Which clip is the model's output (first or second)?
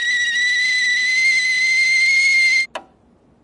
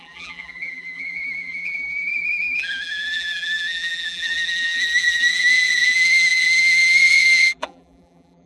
second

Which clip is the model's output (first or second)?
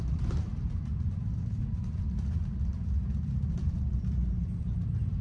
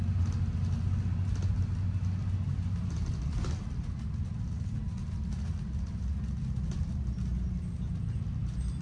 first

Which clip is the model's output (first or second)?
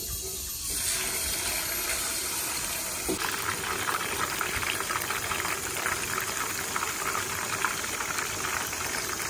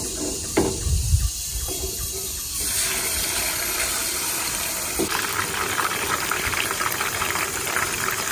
second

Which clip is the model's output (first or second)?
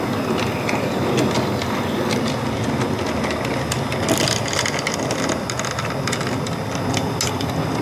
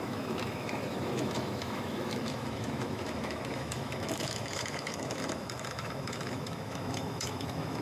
second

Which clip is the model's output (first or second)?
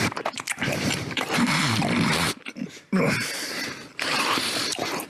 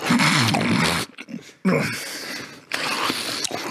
first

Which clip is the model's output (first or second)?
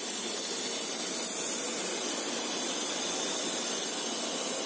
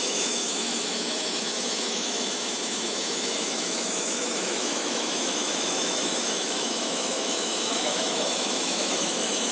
second